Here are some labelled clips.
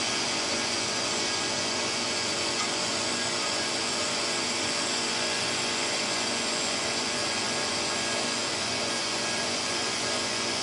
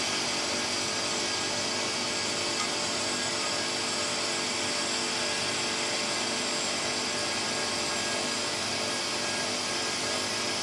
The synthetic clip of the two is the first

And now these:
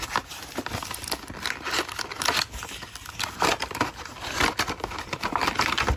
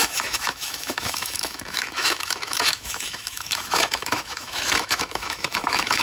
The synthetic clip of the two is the second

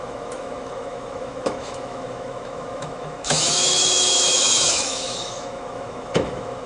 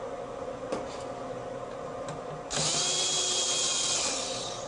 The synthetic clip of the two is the first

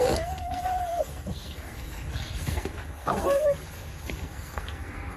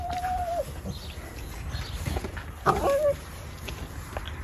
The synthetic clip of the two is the first